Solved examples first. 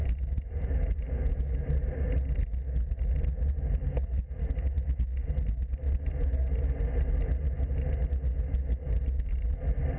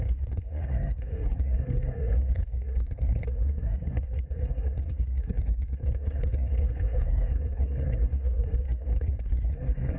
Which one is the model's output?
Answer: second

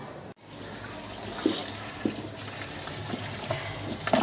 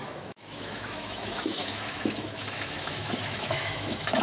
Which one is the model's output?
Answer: second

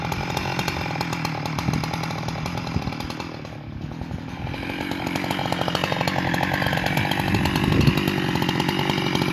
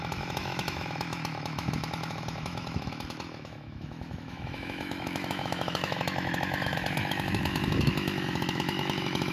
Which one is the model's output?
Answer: second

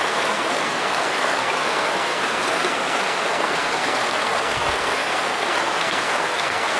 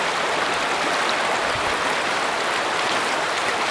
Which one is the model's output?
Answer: first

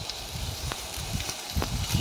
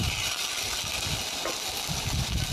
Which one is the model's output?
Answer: first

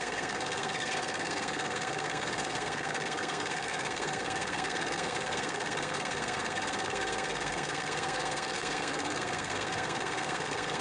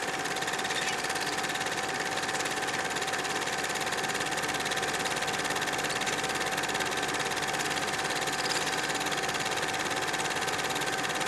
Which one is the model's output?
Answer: first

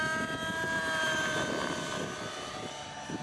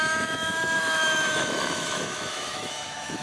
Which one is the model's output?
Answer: second